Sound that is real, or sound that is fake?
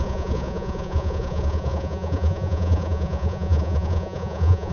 fake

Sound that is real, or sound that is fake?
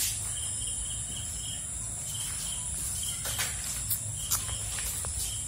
real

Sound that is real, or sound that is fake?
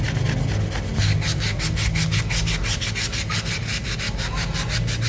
real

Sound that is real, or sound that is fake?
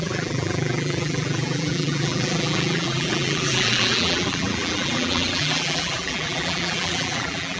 fake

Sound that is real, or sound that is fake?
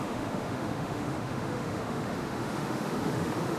fake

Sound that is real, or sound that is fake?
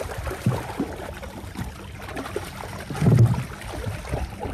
real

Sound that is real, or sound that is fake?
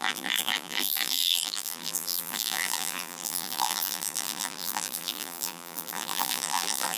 fake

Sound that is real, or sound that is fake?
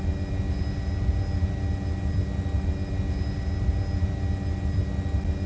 real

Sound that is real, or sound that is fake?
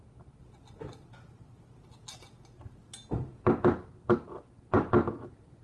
real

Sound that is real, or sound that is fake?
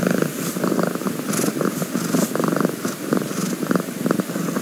real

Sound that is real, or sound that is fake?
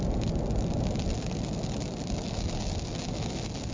real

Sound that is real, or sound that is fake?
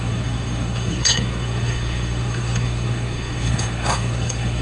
fake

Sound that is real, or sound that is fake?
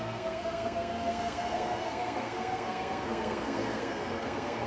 fake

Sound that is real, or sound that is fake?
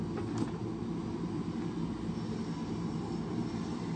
real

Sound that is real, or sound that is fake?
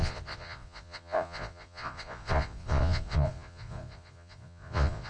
fake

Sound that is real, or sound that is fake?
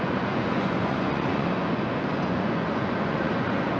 fake